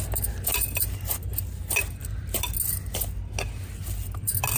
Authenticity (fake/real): real